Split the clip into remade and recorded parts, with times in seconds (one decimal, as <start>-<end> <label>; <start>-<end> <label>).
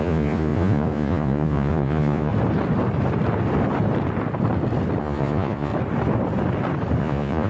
0.0-2.3 remade; 2.3-5.0 recorded; 5.0-5.7 remade; 5.7-7.0 recorded; 7.0-7.5 remade